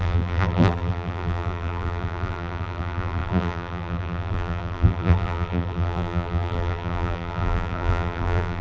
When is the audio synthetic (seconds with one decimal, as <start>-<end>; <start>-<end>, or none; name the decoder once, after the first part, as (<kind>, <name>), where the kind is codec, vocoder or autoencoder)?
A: 0.0-8.6 (vocoder, BigVGAN v2)